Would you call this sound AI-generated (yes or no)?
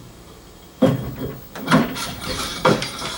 yes